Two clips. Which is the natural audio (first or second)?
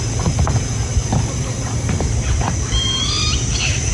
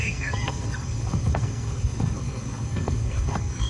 first